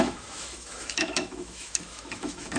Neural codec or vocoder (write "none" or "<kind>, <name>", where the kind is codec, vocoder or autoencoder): autoencoder, DAC-VAE